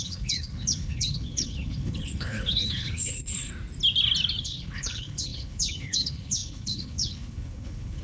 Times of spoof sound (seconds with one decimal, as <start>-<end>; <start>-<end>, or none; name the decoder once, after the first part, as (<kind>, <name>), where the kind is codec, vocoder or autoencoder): 0.0-3.5 (codec, HILCodec); 4.4-8.0